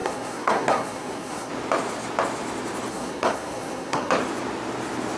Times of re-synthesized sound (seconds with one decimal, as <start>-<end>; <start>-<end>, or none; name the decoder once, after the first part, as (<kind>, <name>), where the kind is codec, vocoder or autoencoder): 0.0-1.5 (codec, SNAC); 2.9-4.1